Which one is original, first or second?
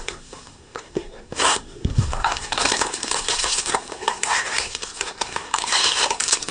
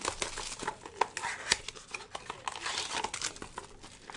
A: second